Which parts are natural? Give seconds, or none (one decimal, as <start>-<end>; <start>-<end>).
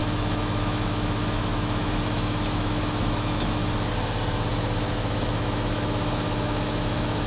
3.6-4.9